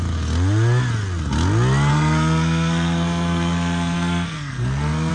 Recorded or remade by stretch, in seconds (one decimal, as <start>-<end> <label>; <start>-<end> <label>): 0.0-1.9 recorded; 1.9-5.1 remade